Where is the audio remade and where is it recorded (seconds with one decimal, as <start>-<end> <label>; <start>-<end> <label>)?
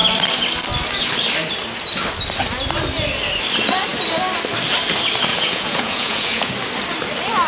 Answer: 0.0-5.3 recorded; 5.3-6.5 remade; 6.5-7.5 recorded